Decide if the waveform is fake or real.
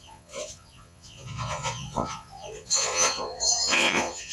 fake